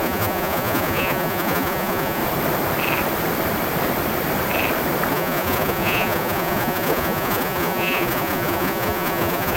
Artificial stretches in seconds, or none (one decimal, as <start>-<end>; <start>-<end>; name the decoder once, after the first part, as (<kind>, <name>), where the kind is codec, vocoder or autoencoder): 0.0-2.2 (vocoder, Vocos); 5.1-9.6